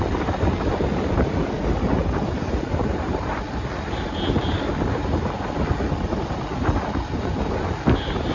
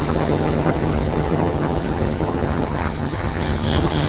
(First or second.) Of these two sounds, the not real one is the second